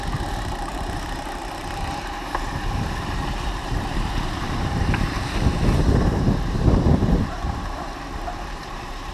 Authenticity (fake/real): fake